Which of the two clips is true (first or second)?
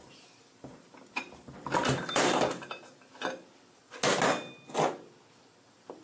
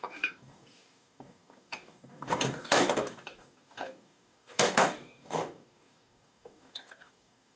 first